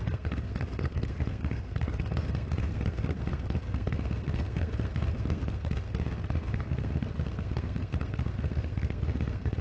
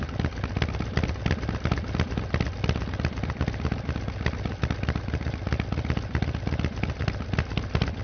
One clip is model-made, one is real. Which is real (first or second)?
second